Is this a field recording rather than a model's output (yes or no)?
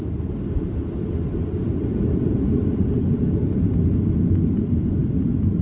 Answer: no